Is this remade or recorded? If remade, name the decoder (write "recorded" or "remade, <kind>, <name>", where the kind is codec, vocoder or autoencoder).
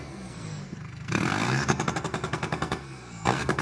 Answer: remade, codec, SNAC